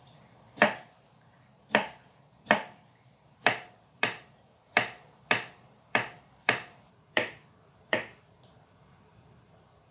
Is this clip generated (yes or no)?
yes